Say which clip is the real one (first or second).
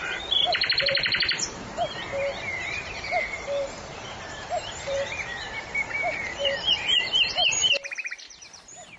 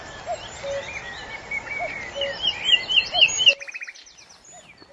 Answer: second